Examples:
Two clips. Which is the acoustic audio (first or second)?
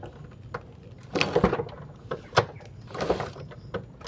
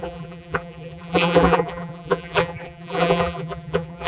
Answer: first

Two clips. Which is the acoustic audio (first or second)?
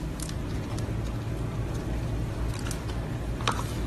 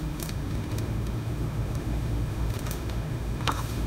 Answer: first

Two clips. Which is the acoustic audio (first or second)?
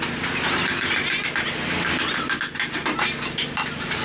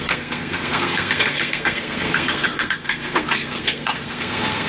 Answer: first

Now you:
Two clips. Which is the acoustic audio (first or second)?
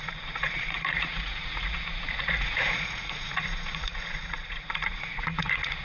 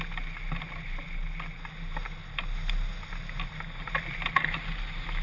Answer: second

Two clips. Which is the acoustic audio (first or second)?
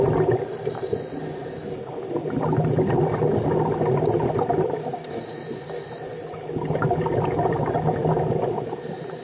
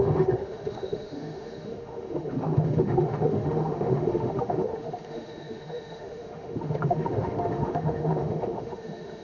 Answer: first